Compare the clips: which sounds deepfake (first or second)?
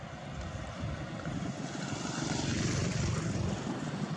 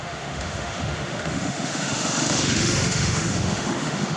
second